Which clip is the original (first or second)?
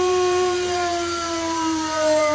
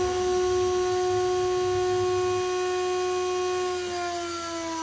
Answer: second